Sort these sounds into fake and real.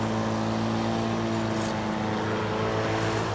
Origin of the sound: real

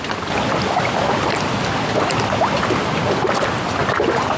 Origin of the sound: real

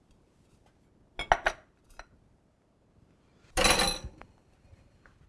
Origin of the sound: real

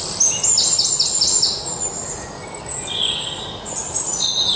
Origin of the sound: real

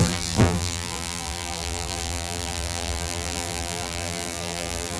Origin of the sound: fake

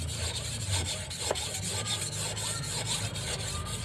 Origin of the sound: real